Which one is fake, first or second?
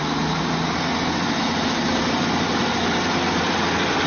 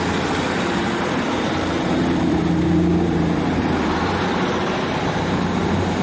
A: second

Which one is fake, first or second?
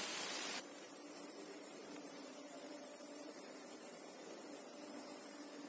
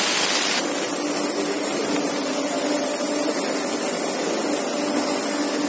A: first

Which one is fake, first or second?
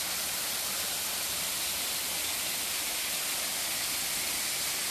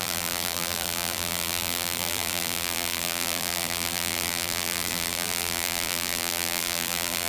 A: second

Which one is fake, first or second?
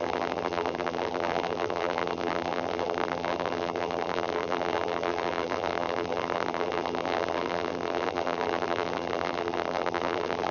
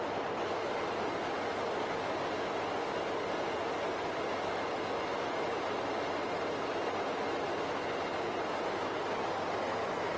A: first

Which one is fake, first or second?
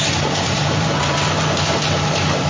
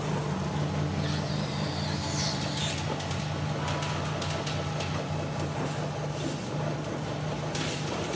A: first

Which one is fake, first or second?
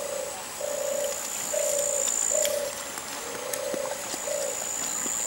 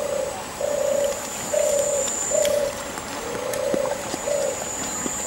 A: second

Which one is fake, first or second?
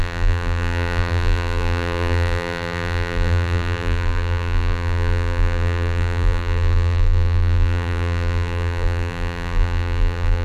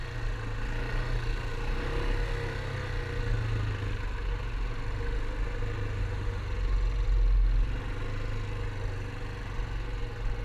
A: first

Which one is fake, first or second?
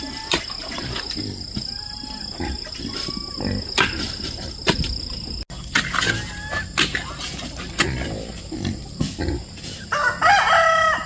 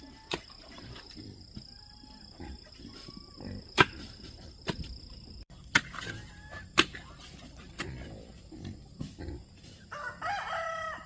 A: second